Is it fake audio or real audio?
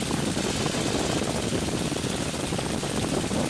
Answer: real